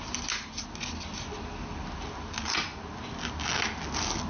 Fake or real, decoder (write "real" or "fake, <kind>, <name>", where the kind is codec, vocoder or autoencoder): real